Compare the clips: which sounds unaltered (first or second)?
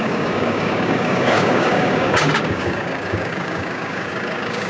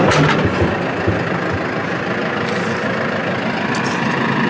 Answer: second